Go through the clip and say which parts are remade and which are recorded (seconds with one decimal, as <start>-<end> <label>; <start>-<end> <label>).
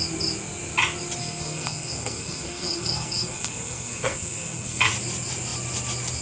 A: 0.0-1.2 recorded; 1.2-4.9 remade; 4.9-6.2 recorded